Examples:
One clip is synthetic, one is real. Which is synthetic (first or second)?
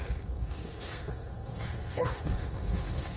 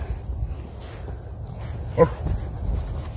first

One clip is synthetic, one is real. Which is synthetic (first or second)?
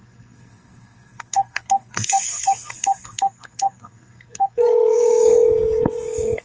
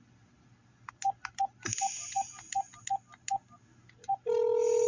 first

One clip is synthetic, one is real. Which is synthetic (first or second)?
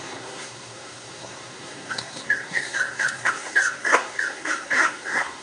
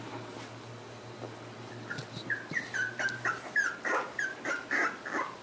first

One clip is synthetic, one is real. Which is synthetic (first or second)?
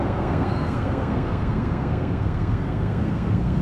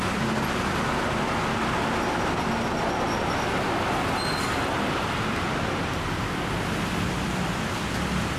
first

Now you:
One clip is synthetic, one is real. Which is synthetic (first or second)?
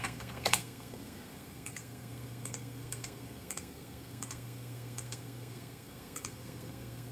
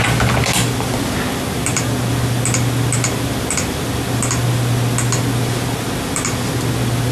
first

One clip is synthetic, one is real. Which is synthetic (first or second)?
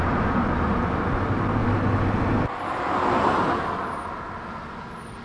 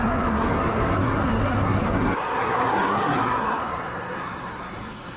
second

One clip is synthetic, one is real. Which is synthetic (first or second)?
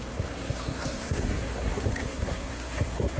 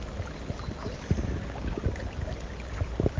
first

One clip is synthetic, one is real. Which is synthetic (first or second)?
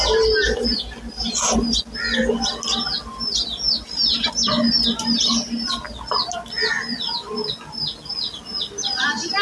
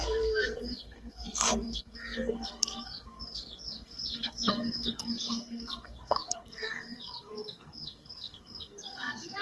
second